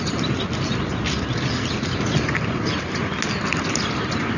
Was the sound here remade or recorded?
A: recorded